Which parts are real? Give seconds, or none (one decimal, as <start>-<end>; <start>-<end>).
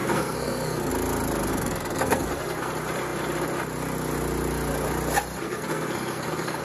0.9-1.5; 2.7-5.4